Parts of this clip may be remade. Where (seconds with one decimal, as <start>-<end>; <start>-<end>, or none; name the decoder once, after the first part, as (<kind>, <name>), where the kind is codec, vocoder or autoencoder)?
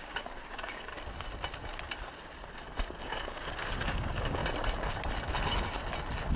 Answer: 0.0-0.9 (codec, DAC); 3.0-4.4